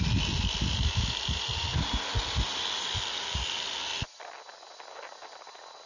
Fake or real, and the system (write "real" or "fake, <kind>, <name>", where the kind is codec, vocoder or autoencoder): real